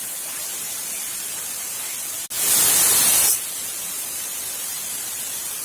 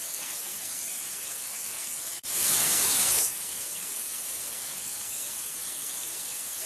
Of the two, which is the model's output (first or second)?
second